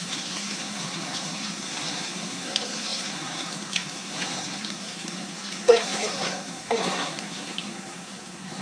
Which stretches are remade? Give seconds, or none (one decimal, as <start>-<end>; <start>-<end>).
0.0-8.6